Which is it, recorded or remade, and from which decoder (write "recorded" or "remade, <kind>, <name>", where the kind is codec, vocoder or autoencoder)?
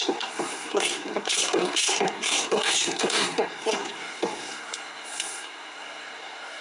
remade, codec, SNAC